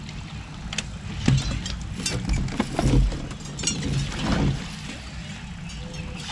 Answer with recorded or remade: recorded